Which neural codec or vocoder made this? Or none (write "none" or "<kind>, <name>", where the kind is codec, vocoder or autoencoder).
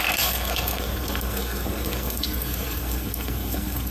codec, SNAC